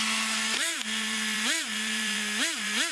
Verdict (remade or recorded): remade